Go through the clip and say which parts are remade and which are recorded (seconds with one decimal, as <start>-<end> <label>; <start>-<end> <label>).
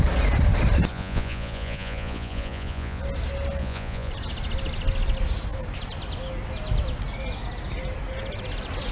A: 0.0-0.9 recorded; 0.9-3.0 remade; 3.0-3.6 recorded; 3.6-4.1 remade; 4.1-8.9 recorded